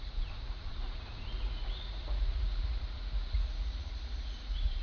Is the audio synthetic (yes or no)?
yes